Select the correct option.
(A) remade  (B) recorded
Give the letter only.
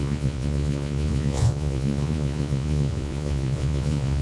A